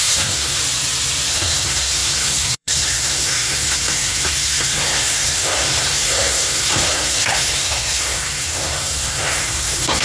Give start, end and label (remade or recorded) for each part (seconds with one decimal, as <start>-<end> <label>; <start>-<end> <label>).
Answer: 0.0-0.6 remade; 0.6-1.3 recorded; 1.3-10.0 remade